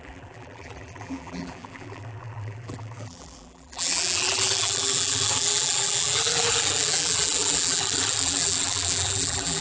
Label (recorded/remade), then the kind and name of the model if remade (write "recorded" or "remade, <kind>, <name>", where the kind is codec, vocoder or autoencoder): remade, vocoder, BigVGAN v2